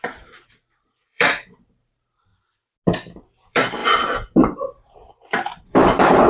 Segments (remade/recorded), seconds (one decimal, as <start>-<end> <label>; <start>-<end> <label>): 0.0-2.3 remade; 2.3-3.3 recorded; 3.3-6.3 remade